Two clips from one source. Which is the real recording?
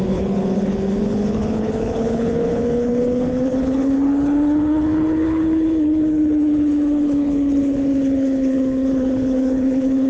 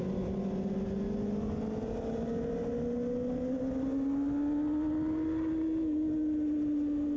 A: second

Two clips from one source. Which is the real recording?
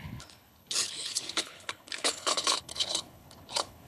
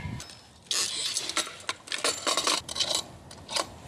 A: second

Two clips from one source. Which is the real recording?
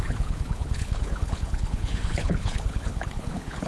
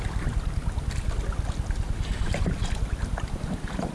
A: second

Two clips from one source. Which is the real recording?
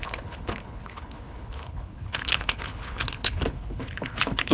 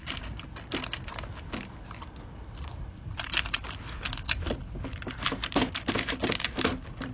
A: second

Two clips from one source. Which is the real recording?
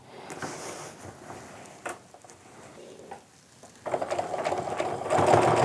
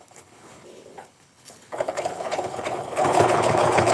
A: first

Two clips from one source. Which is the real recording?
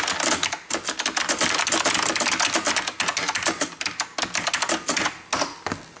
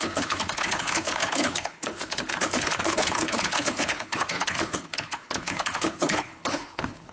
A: first